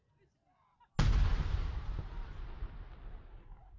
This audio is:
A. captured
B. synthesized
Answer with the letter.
A